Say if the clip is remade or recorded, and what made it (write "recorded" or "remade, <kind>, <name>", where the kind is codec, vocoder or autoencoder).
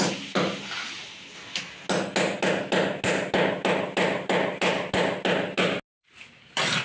recorded